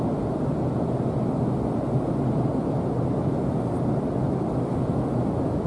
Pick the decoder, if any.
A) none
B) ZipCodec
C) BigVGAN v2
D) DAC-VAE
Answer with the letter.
A